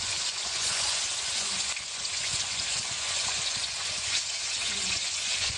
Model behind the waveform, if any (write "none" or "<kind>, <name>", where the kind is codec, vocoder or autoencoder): vocoder, Vocos